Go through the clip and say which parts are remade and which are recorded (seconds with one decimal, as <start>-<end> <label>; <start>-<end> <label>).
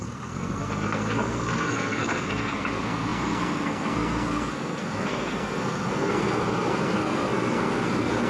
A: 0.0-8.3 remade